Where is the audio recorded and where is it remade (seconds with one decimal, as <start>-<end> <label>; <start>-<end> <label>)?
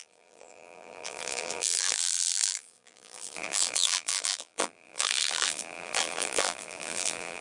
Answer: 0.0-7.4 remade